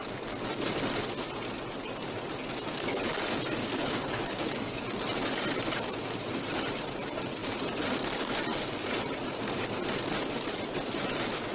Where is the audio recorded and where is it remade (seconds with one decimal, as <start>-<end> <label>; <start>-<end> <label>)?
0.0-3.6 recorded; 3.6-4.8 remade; 4.8-8.5 recorded; 8.5-9.0 remade; 9.0-11.5 recorded